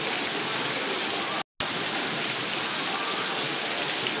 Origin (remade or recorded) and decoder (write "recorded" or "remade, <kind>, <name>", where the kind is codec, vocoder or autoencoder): recorded